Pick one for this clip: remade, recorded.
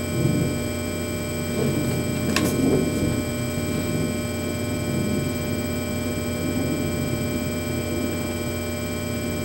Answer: recorded